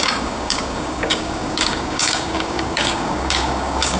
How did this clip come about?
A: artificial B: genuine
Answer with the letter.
A